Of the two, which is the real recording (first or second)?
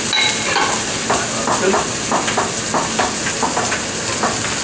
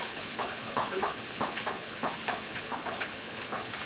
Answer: first